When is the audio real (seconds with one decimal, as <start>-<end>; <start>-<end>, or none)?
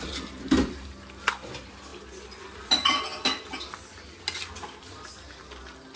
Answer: 0.0-6.0